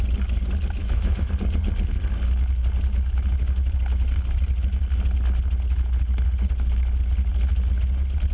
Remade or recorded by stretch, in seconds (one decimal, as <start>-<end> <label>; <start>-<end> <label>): 0.0-0.8 recorded; 0.8-1.3 remade; 1.3-8.3 recorded